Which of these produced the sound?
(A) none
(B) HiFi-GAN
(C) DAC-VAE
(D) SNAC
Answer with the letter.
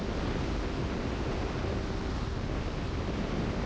A